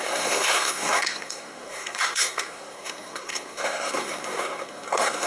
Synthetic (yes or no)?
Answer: yes